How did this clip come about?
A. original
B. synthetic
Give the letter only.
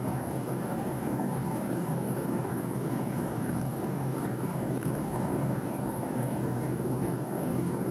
B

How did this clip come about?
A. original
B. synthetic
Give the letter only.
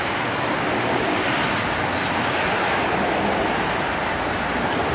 A